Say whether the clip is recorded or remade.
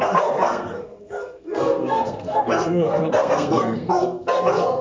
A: remade